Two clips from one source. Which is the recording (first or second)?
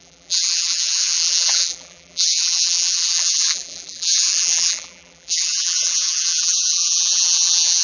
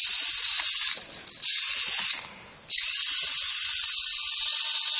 second